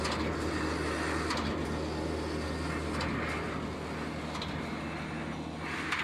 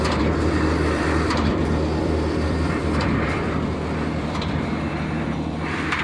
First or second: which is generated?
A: second